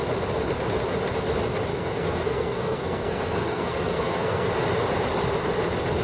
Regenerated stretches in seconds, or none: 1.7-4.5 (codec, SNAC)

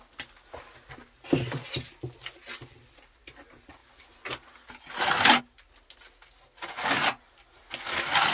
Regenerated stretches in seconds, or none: none

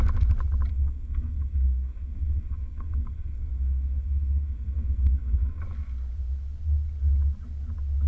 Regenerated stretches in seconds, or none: 0.7-5.6 (codec, SNAC)

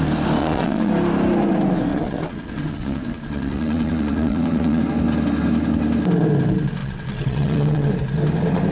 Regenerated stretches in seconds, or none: 0.4-0.9 (vocoder, WaveNeXt); 1.9-4.8; 6.8-7.9